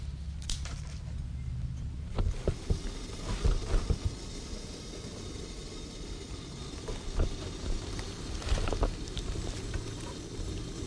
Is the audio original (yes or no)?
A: yes